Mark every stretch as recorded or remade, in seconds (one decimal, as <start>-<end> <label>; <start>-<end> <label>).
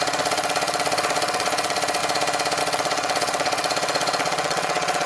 0.0-2.0 remade; 2.0-2.6 recorded; 2.6-5.1 remade